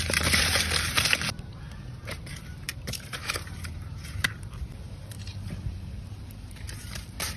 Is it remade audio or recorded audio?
remade